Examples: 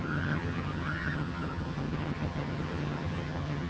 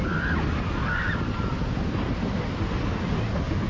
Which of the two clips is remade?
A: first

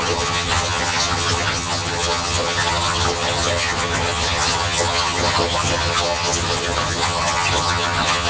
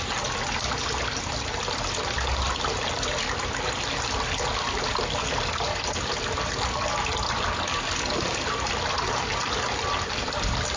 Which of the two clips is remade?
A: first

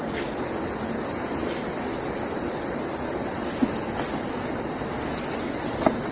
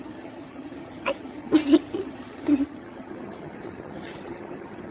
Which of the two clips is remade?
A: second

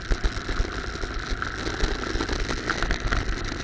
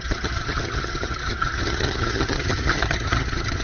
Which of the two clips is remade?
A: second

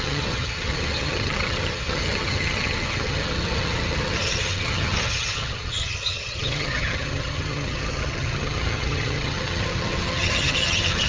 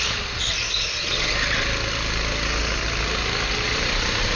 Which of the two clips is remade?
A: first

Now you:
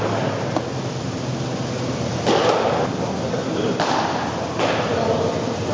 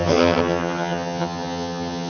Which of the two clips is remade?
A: second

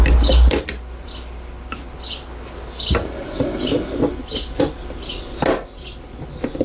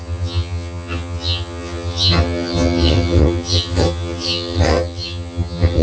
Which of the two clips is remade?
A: second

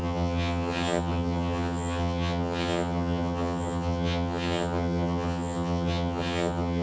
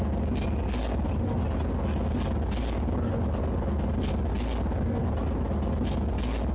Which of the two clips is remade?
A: first